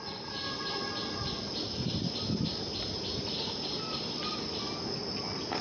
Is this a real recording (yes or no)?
yes